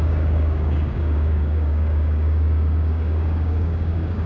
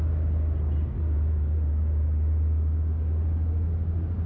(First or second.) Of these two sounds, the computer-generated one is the first